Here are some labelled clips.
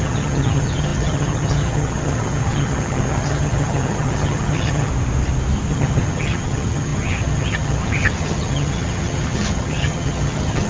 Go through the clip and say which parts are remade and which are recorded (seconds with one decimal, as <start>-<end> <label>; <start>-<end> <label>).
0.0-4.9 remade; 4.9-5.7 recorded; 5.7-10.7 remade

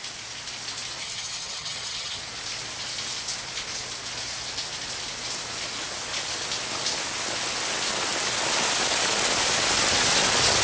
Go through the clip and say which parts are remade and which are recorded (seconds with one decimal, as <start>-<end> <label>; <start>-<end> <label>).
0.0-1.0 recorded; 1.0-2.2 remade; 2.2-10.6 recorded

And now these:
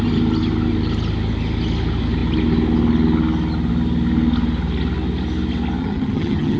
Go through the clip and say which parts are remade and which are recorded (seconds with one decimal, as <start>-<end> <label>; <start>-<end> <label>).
0.0-5.8 recorded; 5.8-6.6 remade

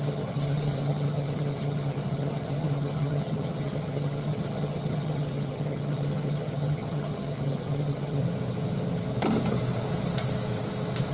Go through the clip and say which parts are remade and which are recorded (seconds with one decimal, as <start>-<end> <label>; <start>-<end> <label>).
0.0-8.2 remade; 8.2-11.1 recorded